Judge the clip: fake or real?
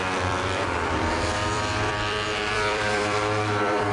fake